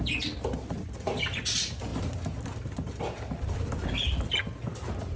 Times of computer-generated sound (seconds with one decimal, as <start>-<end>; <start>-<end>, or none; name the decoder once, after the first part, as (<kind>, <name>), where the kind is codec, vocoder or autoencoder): none